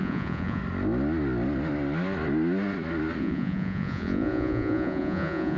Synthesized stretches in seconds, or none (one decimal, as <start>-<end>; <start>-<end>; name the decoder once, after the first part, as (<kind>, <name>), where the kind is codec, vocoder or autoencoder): 0.0-0.6 (vocoder, Vocos); 3.2-5.6